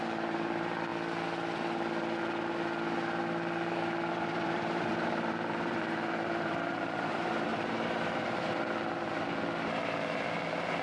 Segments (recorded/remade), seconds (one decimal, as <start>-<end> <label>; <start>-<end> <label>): 0.0-0.9 remade; 0.9-4.1 recorded; 4.1-10.8 remade